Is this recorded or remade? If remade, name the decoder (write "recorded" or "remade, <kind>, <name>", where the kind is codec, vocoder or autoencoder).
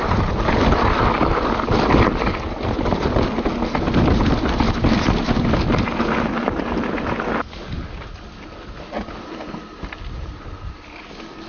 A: recorded